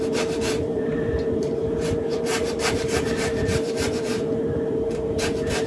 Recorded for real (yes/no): no